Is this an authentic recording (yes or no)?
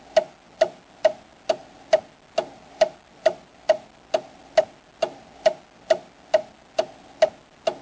yes